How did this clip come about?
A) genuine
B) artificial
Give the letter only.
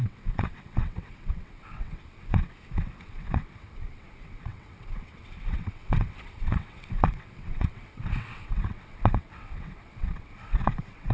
B